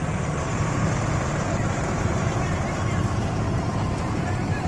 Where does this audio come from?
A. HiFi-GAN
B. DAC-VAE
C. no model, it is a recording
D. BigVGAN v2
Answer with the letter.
D